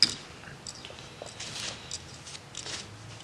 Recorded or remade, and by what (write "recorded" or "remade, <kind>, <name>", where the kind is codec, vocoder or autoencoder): recorded